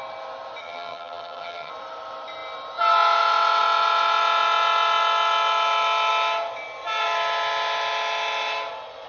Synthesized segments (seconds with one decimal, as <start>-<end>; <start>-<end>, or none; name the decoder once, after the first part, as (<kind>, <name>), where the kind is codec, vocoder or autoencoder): 0.6-1.7 (vocoder, HiFi-GAN)